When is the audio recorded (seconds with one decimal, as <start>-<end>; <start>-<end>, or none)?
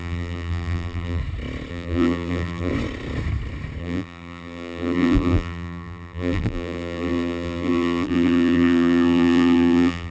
1.2-1.7; 2.7-3.8